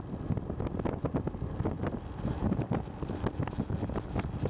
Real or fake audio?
real